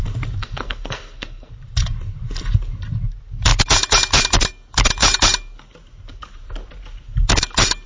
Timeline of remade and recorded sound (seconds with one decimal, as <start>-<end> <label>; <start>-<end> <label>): 0.0-0.4 recorded; 0.4-1.5 remade; 1.5-7.9 recorded